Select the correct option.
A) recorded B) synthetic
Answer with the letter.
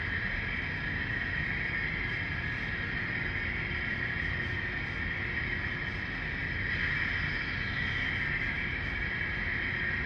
A